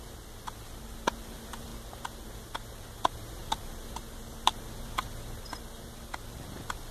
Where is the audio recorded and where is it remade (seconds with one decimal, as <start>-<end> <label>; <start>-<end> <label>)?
0.0-1.7 remade; 1.7-2.3 recorded; 2.3-6.9 remade